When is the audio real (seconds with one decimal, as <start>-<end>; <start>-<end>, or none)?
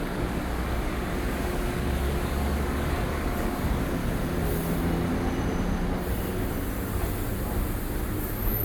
4.0-8.2